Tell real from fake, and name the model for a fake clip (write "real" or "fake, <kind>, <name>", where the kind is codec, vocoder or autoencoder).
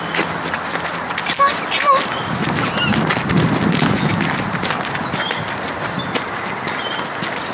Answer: real